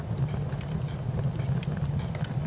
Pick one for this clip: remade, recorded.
recorded